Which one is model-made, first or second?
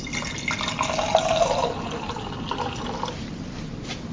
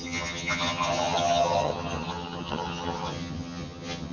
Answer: second